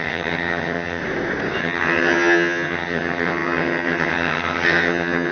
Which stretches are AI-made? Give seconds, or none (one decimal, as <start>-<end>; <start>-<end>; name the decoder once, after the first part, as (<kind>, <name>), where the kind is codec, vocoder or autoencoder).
0.0-1.0 (vocoder, HiFi-GAN); 1.6-5.3